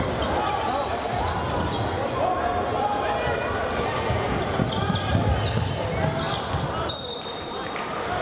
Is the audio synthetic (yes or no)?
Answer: no